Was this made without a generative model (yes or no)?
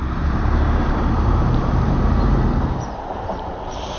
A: no